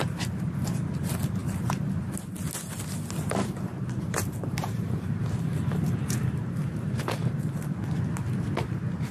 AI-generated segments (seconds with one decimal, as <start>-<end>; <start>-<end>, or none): 3.4-8.0